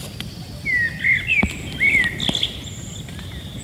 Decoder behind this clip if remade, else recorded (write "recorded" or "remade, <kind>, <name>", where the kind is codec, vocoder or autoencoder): recorded